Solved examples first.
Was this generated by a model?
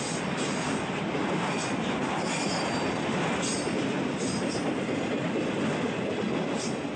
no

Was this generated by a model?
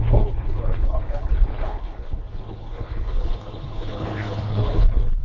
yes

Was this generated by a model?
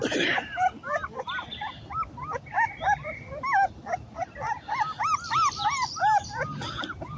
no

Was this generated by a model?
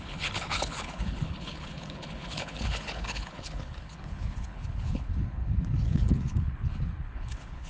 yes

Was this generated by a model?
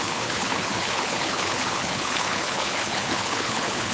yes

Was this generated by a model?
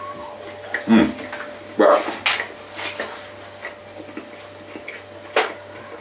no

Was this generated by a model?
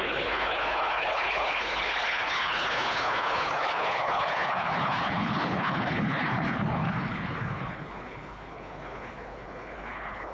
yes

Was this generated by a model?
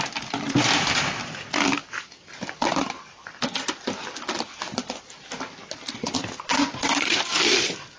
no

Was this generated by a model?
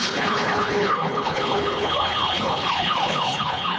yes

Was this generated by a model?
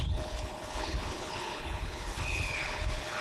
yes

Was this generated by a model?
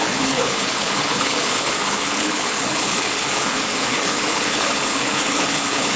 yes